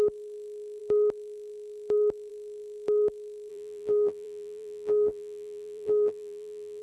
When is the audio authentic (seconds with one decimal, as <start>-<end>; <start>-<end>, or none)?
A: 0.0-3.5